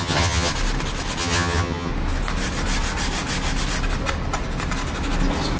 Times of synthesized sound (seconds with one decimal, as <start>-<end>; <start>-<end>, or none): 0.0-0.5; 1.2-1.9